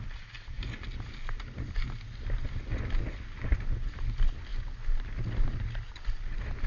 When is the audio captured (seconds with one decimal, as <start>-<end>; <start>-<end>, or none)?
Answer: 0.0-6.7